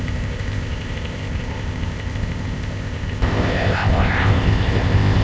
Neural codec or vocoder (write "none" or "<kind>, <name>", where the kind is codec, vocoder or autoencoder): codec, ZipCodec